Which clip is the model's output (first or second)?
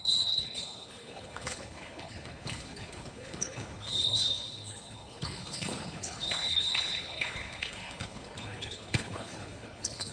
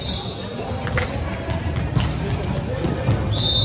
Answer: first